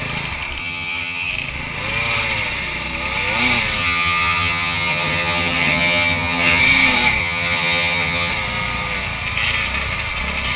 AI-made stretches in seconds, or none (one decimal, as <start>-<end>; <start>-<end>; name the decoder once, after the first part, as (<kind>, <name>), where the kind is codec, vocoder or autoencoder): 0.6-1.3 (vocoder, HiFi-GAN); 3.8-6.6; 7.2-8.3